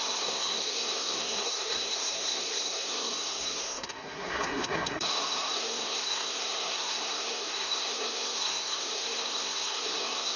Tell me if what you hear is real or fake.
fake